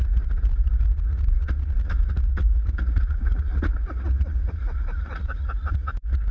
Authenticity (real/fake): fake